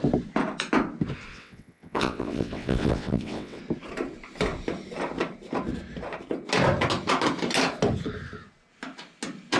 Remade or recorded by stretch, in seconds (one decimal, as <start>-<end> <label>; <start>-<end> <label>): 0.0-1.3 recorded; 1.3-3.6 remade; 3.6-9.6 recorded